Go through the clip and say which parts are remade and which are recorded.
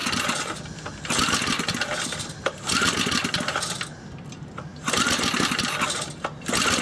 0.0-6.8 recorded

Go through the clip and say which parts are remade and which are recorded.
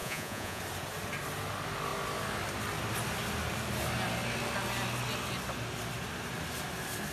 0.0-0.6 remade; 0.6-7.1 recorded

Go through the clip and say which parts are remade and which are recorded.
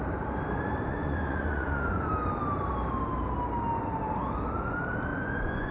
0.0-0.9 recorded; 0.9-2.1 remade; 2.1-5.1 recorded; 5.1-5.7 remade